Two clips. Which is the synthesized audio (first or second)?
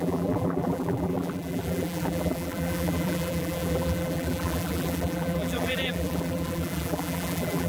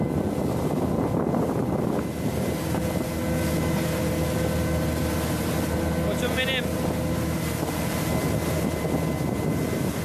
first